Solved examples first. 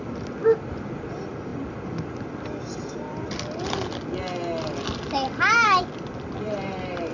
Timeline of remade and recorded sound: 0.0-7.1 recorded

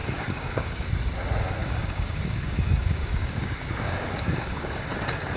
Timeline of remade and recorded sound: 0.0-0.9 remade; 0.9-1.6 recorded; 1.6-4.8 remade; 4.8-5.4 recorded

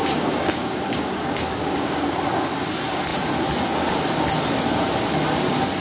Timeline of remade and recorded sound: 0.0-2.1 remade; 2.1-5.8 recorded